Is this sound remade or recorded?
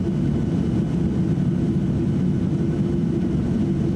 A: recorded